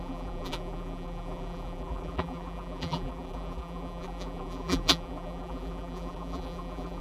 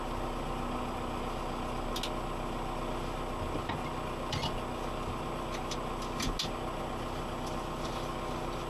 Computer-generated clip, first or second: first